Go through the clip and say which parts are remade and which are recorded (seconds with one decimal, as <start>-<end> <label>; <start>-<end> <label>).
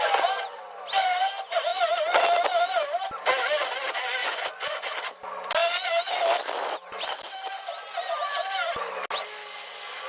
0.0-4.2 recorded; 4.2-4.9 remade; 4.9-10.1 recorded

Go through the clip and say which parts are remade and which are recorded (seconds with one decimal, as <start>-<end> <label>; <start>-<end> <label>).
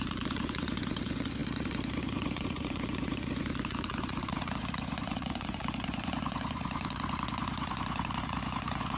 0.0-9.0 remade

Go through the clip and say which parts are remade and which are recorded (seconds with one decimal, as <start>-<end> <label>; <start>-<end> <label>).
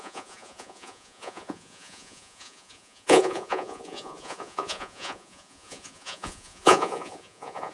0.0-7.7 remade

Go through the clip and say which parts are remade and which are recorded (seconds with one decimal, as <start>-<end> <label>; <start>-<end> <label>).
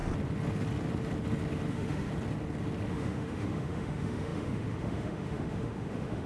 0.0-1.7 recorded; 1.7-2.1 remade; 2.1-2.9 recorded; 2.9-6.3 remade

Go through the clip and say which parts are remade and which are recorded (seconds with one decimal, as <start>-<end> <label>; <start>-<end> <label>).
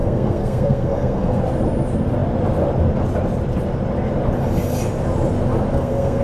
0.0-1.4 remade; 1.4-5.7 recorded; 5.7-6.2 remade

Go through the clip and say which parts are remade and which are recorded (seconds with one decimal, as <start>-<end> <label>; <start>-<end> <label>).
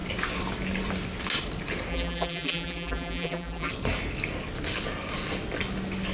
0.0-1.9 recorded; 1.9-3.7 remade; 3.7-6.1 recorded